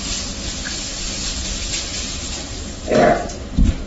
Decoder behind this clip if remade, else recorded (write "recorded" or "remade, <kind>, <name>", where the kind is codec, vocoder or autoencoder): recorded